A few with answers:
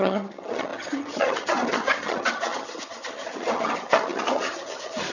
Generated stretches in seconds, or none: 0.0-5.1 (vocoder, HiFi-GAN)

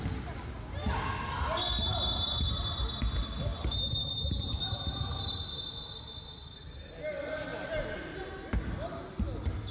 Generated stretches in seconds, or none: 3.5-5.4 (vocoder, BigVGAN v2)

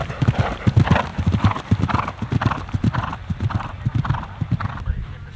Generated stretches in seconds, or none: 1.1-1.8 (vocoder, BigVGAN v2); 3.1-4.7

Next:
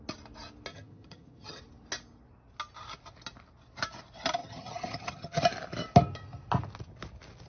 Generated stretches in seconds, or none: 0.7-1.6 (vocoder, HiFi-GAN); 4.4-5.4

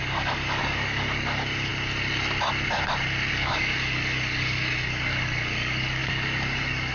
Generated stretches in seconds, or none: 0.0-1.7 (codec, DAC); 3.3-6.9